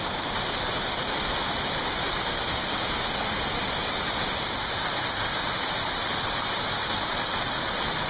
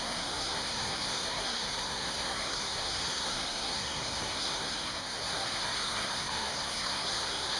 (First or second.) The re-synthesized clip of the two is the second